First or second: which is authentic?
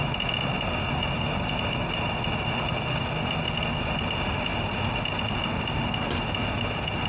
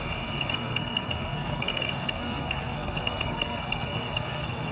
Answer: first